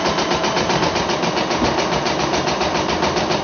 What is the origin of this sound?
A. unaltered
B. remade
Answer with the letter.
A